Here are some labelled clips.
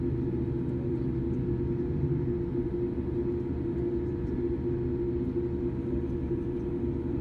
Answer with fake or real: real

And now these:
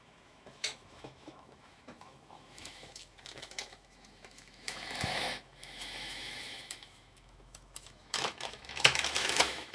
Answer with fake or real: fake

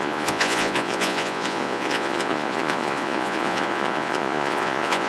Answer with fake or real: fake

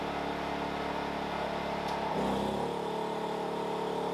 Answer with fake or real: real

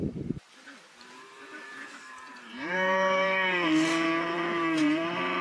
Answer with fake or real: fake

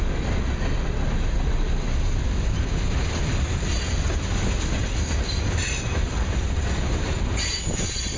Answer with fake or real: real